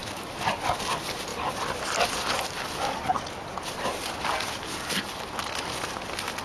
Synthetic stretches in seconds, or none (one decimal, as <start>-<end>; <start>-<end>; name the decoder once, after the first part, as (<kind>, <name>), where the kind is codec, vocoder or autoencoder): 0.0-0.6 (vocoder, BigVGAN v2)